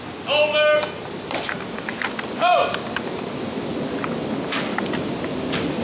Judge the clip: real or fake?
real